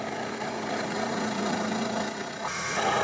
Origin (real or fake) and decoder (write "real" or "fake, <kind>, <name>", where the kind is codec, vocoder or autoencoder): fake, vocoder, Vocos